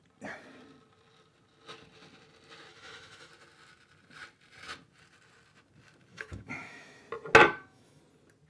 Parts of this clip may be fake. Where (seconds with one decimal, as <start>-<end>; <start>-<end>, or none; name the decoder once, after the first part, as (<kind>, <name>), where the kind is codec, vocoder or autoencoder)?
2.7-3.3 (autoencoder, DAC-VAE); 6.1-7.0; 7.4-8.0